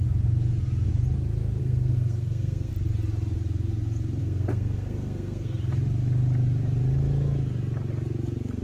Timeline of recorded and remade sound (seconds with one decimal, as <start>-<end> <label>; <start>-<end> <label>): 0.0-1.6 recorded; 1.6-2.7 remade; 2.7-4.2 recorded; 4.2-5.6 remade; 5.6-8.6 recorded